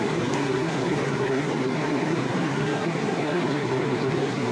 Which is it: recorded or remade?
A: remade